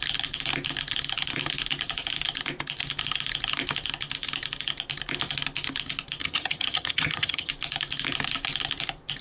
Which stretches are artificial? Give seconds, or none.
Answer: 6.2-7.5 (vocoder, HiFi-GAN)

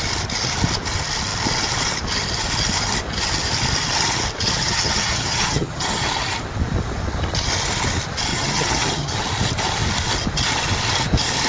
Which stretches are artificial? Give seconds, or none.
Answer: 4.6-6.1 (vocoder, HiFi-GAN); 8.3-9.2